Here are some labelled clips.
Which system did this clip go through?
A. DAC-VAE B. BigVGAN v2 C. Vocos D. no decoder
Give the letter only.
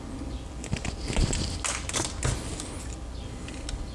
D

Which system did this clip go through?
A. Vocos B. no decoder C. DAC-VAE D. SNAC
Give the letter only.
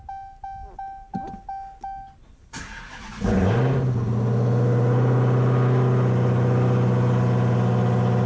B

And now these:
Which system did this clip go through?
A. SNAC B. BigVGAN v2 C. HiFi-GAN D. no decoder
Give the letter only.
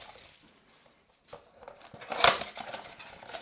D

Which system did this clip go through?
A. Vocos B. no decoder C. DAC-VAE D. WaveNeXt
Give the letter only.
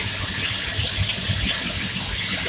B